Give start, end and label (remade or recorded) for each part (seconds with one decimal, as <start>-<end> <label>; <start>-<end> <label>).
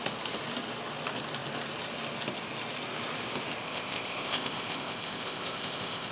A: 0.0-3.6 recorded; 3.6-6.1 remade